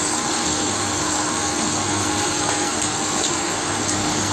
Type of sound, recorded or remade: remade